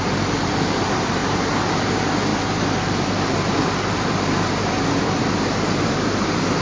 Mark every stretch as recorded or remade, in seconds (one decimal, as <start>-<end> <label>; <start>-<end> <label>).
0.0-1.2 remade; 1.2-1.9 recorded; 1.9-6.6 remade